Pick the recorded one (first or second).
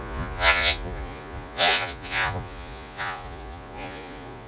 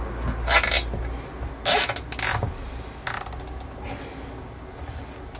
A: second